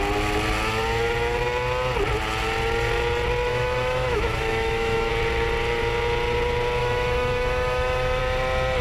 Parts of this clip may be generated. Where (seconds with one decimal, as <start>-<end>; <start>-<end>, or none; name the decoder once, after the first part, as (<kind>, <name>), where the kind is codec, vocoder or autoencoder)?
3.5-5.1 (autoencoder, DAC-VAE); 6.8-8.2

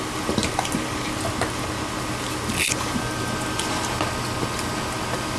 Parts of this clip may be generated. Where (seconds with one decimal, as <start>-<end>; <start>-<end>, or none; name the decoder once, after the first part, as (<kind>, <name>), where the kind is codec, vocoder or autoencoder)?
none